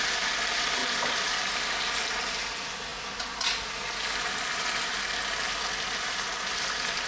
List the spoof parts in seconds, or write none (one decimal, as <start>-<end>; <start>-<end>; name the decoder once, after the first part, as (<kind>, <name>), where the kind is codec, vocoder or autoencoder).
none